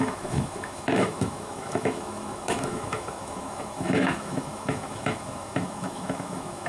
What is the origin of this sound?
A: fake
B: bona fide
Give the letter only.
A